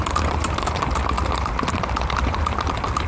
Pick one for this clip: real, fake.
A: real